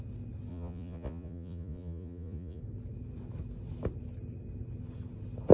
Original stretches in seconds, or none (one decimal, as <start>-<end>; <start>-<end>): 0.0-0.5; 2.6-5.5